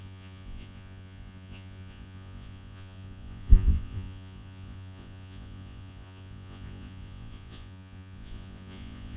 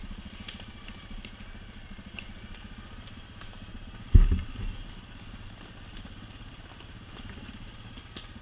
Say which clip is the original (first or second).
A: second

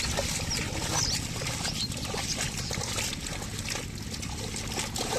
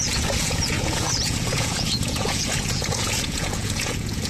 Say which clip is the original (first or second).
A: first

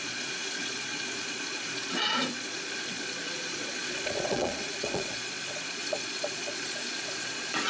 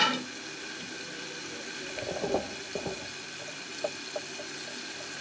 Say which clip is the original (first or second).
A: second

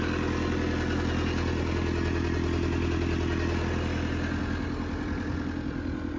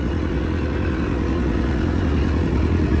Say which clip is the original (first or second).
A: first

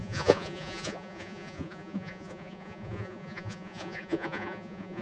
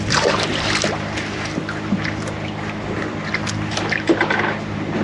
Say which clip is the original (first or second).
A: second